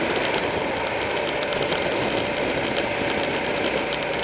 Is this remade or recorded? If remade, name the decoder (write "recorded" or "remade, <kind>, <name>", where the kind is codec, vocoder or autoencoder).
recorded